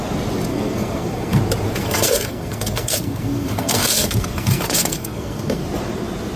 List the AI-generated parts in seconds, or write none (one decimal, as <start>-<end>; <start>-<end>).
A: 0.5-1.4; 1.8-5.6